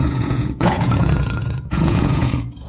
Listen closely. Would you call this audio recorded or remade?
remade